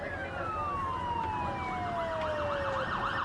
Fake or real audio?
real